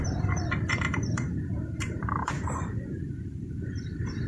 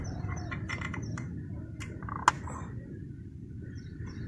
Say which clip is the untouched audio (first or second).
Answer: second